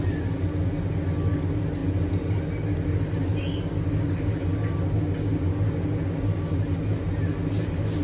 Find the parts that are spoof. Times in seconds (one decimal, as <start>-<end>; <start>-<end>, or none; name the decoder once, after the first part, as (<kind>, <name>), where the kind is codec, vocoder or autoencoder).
none